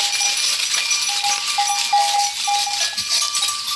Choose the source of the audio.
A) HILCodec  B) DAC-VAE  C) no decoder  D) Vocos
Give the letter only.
C